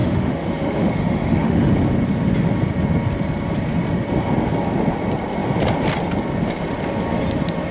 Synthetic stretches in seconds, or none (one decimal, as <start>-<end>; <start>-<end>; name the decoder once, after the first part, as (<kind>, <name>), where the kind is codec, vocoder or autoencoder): 0.0-1.7 (autoencoder, DAC-VAE)